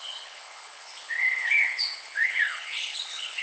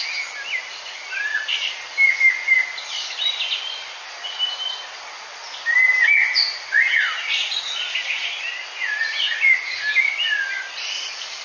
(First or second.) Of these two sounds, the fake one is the first